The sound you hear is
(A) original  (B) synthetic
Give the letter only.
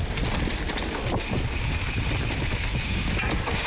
A